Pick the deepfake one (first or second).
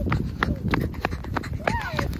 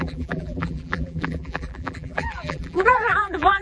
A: second